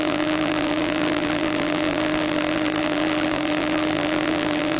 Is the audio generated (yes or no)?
yes